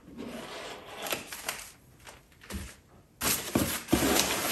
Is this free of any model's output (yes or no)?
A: yes